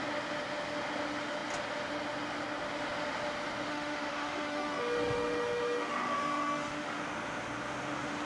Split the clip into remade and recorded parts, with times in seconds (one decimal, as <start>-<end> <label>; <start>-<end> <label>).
0.0-3.7 recorded; 3.7-7.0 remade; 7.0-8.3 recorded